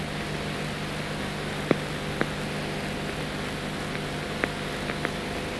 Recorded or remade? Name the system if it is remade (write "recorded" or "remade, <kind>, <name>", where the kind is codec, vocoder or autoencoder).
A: recorded